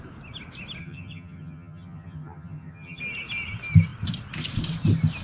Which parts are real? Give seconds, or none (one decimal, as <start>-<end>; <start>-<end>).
0.0-0.8; 3.0-5.2